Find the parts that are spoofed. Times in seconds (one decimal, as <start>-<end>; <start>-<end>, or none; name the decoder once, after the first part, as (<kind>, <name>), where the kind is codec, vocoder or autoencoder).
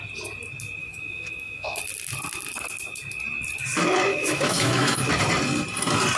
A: 0.8-1.8 (autoencoder, DAC-VAE); 4.1-5.0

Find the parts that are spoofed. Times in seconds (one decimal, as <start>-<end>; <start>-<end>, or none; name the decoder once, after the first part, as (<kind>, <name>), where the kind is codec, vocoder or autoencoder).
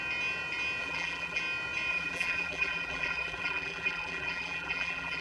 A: 0.8-1.4 (vocoder, BigVGAN v2); 1.9-5.2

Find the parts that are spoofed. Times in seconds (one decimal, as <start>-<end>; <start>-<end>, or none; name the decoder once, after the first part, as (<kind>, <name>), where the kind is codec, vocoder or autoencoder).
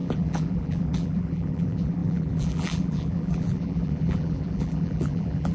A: 0.0-5.5 (vocoder, BigVGAN v2)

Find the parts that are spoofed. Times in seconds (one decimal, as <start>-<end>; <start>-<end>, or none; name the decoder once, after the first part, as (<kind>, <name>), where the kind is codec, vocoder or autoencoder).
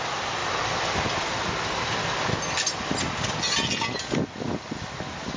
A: none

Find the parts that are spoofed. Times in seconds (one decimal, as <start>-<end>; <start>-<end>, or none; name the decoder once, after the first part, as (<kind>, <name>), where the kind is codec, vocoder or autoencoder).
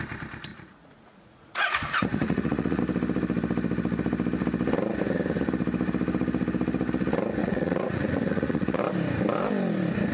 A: 0.5-2.8 (vocoder, Vocos); 7.4-8.8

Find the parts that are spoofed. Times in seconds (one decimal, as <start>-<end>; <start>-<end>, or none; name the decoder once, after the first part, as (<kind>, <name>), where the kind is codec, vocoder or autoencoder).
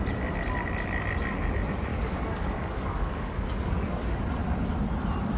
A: 1.9-4.2 (codec, DAC)